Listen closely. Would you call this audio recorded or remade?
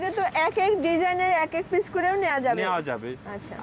remade